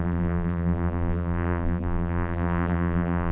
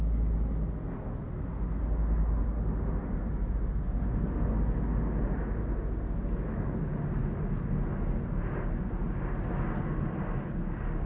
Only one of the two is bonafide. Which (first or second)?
second